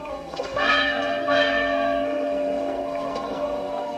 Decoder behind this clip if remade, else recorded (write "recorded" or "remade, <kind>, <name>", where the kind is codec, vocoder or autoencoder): remade, codec, SNAC